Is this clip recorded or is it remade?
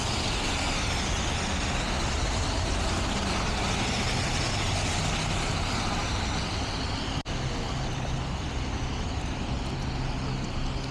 recorded